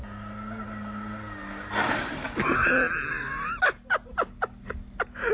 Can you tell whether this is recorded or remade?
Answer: recorded